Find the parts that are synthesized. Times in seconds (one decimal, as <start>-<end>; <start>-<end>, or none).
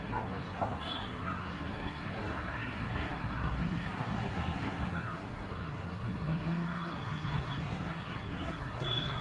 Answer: 0.0-9.2